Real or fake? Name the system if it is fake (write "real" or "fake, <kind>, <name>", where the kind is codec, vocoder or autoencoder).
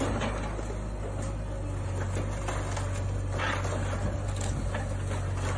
real